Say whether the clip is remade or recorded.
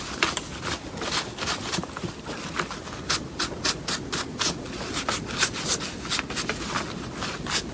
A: recorded